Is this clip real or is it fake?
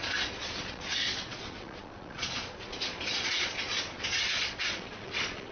fake